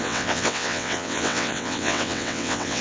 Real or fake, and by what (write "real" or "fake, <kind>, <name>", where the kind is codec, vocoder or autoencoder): fake, vocoder, WaveNeXt